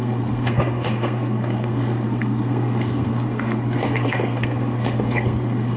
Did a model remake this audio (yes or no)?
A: yes